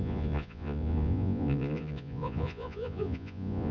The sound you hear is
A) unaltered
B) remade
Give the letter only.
B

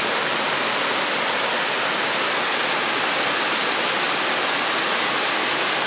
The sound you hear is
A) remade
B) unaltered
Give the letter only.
B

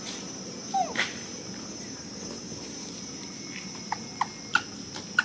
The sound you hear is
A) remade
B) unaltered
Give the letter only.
B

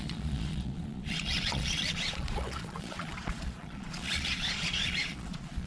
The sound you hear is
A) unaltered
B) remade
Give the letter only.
B